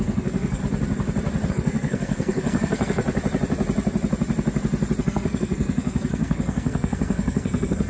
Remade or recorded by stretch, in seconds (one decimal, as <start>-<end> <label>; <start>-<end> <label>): 0.0-0.6 remade; 0.6-1.5 recorded; 1.5-3.0 remade; 3.0-5.0 recorded; 5.0-7.9 remade